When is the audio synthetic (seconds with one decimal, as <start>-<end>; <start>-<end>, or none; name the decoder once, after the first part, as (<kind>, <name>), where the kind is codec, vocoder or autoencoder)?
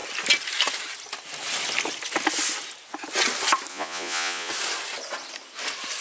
3.7-4.5 (vocoder, Vocos)